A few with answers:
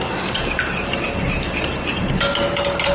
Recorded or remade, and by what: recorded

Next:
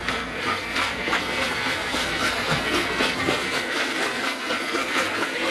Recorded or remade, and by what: remade, codec, SNAC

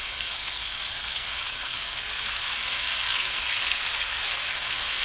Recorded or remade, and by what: remade, codec, SNAC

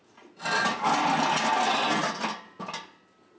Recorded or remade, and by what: recorded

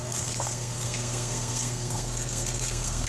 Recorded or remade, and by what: remade, codec, SNAC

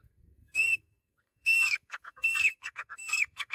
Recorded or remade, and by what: remade, codec, SNAC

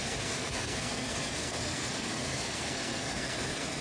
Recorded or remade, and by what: remade, codec, SNAC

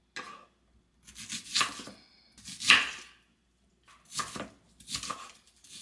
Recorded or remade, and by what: recorded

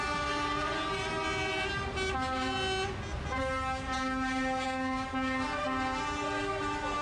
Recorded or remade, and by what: recorded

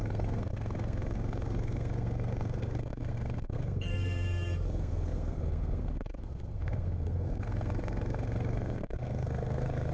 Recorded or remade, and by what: remade, codec, SNAC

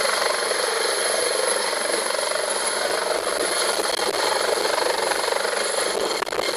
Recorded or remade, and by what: recorded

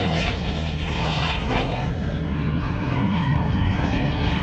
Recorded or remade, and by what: remade, codec, SNAC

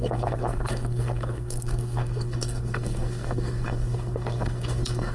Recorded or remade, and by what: remade, codec, SNAC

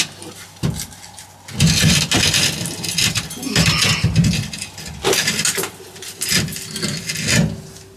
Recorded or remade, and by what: recorded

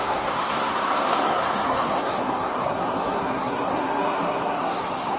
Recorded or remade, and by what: remade, codec, SNAC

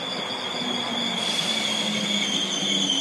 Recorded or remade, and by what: recorded